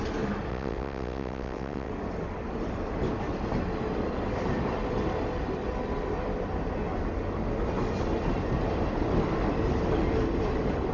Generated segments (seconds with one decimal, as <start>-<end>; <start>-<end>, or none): 0.5-1.9